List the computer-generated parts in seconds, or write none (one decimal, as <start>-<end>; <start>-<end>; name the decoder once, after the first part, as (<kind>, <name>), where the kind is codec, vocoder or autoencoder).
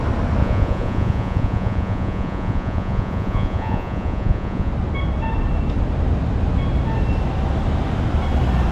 0.4-4.7 (vocoder, Vocos)